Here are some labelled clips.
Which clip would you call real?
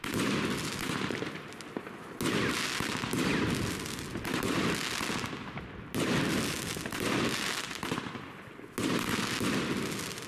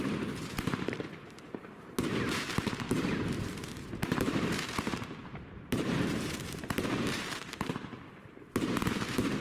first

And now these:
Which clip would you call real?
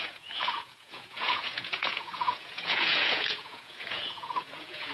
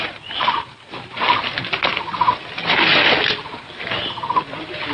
second